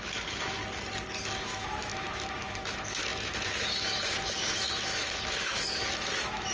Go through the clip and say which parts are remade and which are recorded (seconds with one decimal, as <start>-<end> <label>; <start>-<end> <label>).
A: 0.0-0.6 remade; 0.6-1.4 recorded; 1.4-6.5 remade